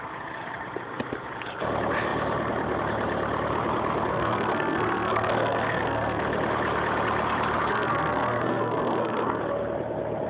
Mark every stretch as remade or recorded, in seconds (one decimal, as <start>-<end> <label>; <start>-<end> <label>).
0.0-4.1 recorded; 4.1-6.2 remade; 6.2-7.7 recorded; 7.7-9.4 remade; 9.4-10.3 recorded